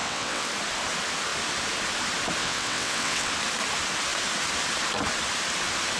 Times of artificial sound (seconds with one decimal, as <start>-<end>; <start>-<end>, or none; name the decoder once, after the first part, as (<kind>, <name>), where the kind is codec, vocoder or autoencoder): 0.0-0.5 (vocoder, WaveNeXt); 2.4-3.3